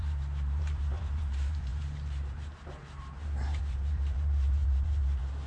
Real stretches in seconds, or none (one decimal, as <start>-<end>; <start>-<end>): none